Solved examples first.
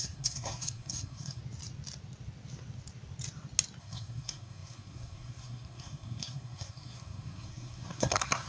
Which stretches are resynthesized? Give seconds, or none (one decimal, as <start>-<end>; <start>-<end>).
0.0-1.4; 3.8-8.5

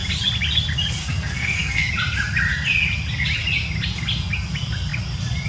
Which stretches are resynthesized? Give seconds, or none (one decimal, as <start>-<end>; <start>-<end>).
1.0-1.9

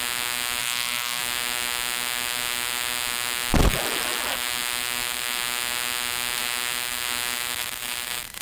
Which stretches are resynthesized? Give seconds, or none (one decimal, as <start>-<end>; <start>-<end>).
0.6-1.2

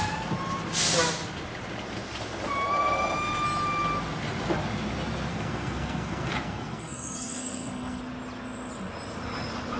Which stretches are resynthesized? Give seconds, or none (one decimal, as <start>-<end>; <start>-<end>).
5.3-8.0

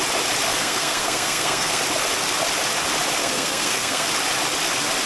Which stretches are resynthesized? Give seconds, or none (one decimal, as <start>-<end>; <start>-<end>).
0.5-1.8; 3.2-4.1